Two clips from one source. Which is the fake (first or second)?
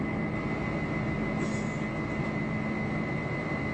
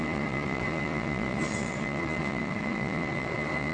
second